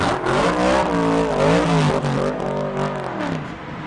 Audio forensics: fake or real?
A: real